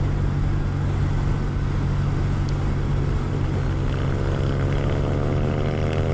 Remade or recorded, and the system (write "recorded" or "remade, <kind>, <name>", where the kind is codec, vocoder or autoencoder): recorded